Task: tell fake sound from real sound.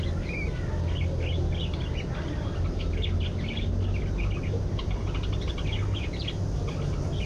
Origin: real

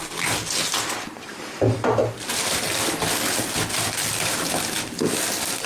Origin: real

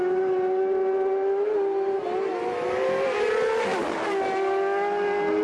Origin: real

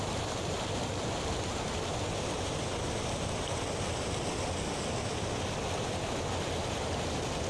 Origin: real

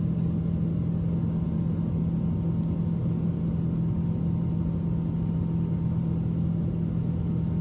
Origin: real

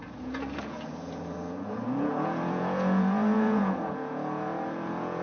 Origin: fake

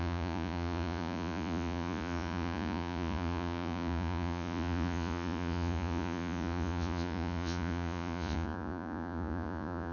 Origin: fake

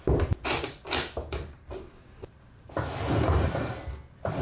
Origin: real